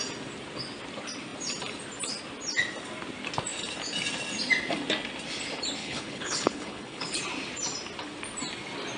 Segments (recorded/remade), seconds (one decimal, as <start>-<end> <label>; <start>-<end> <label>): 0.0-5.8 recorded; 5.8-7.2 remade; 7.2-9.0 recorded